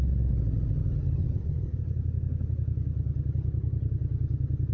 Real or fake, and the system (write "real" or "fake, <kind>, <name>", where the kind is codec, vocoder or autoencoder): real